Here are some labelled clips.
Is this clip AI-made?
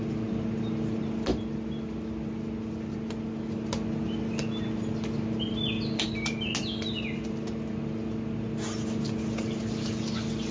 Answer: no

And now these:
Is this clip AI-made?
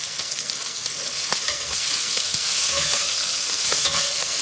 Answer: yes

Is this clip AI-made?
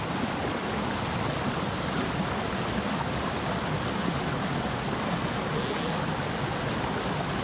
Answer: no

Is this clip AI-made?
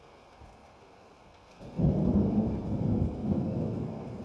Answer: yes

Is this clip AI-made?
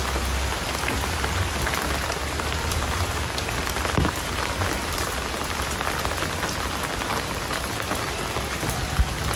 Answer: no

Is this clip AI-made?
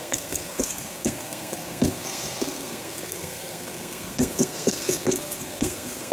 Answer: yes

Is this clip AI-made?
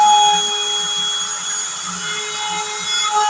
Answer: no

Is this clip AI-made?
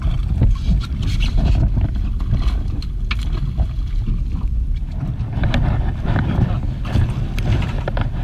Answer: no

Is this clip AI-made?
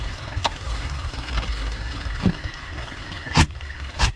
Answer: yes